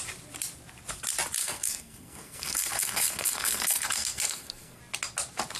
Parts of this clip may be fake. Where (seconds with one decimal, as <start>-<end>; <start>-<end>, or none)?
1.4-4.8